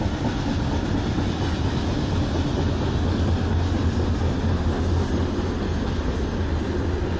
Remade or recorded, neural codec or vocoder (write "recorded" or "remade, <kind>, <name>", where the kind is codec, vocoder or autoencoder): recorded